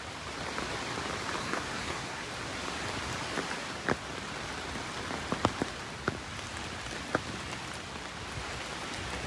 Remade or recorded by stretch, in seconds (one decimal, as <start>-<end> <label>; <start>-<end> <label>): 0.0-1.4 recorded; 1.4-2.2 remade; 2.2-9.3 recorded